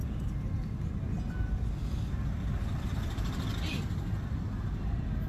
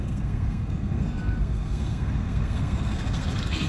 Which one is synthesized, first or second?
second